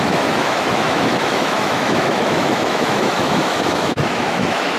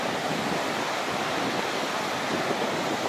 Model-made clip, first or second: first